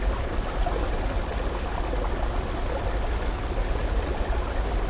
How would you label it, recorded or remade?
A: recorded